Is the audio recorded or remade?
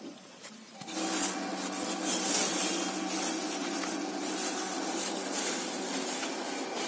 recorded